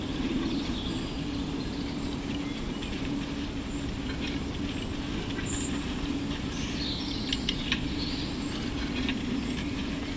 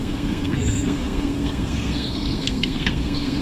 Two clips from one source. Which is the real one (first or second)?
first